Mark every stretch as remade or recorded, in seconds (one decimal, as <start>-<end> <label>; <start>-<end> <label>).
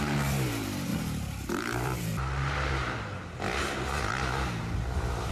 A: 0.0-0.9 remade; 0.9-1.5 recorded; 1.5-2.1 remade; 2.1-4.6 recorded; 4.6-5.3 remade